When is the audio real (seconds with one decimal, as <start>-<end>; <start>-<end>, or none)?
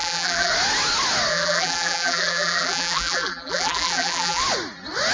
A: 0.5-1.3; 4.4-5.1